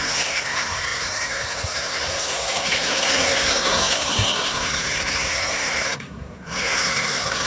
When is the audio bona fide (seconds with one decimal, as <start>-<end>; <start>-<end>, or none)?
none